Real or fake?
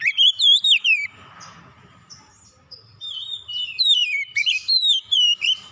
fake